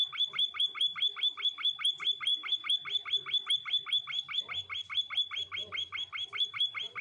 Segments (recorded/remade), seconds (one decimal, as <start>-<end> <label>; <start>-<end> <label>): 0.0-7.0 recorded